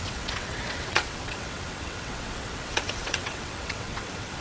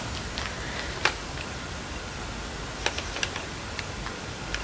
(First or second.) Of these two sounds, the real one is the second